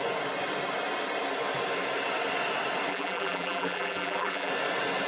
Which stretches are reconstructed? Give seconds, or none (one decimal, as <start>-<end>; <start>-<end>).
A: 2.9-4.5